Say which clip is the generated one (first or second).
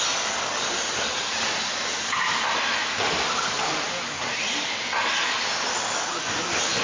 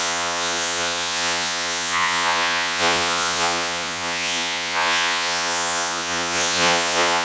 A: second